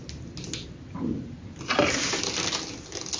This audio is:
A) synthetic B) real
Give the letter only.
B